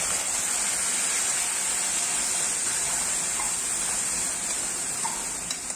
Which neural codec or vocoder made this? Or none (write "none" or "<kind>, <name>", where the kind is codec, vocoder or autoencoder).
none